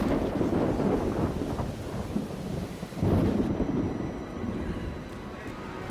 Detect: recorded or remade recorded